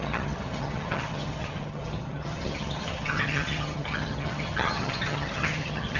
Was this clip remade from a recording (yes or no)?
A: yes